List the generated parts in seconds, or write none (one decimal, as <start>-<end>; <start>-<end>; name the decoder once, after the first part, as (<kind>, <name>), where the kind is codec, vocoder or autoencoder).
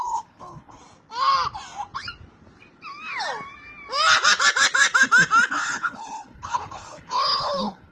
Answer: 0.0-0.8 (codec, HILCodec); 5.5-7.9